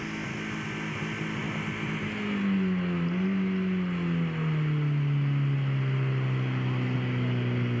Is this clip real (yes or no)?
yes